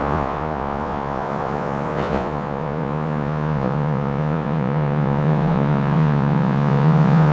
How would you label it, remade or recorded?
remade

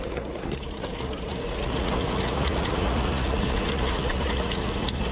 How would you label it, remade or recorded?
remade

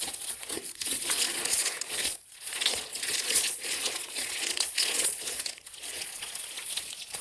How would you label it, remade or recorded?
remade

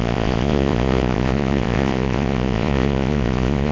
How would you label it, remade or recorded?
remade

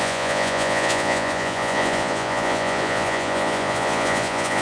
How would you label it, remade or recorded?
remade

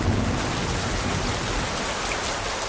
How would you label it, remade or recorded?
recorded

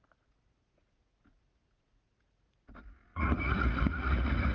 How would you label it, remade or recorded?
remade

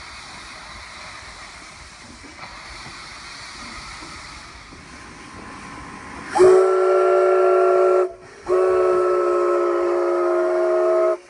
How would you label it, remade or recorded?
recorded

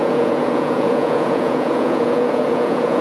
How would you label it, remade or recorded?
remade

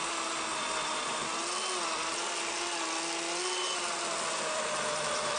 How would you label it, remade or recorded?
recorded